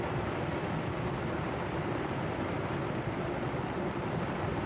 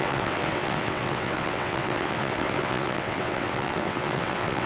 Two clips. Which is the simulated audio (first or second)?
second